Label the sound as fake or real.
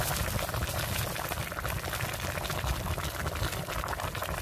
real